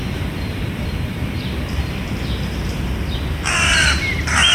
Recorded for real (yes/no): no